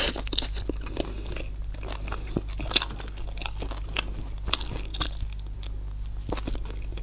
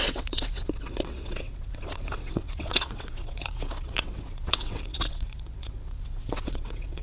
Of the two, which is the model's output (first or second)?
second